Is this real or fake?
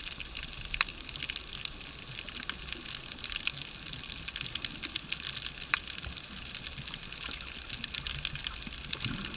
real